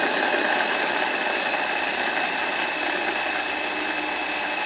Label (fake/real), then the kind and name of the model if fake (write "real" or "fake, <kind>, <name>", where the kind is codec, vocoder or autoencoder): real